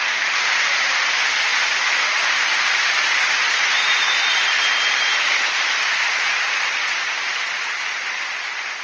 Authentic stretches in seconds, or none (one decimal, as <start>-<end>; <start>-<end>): 0.0-8.8